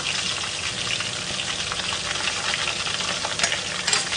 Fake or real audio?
real